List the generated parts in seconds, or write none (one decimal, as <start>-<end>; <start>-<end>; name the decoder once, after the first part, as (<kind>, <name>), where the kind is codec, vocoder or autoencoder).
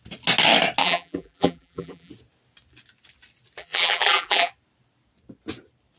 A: 0.8-2.1 (vocoder, BigVGAN v2); 3.6-4.5